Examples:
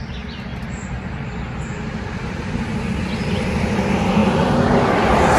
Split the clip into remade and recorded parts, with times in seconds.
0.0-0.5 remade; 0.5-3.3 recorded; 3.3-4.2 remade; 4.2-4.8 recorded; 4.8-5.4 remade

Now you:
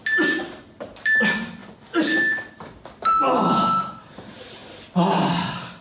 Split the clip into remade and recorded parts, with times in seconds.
0.0-0.6 recorded; 0.6-1.6 remade; 1.6-2.5 recorded; 2.5-4.6 remade; 4.6-5.1 recorded; 5.1-5.8 remade

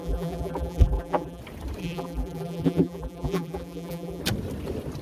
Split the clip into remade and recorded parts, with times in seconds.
0.0-1.4 remade; 1.4-1.8 recorded; 1.8-4.2 remade; 4.2-5.0 recorded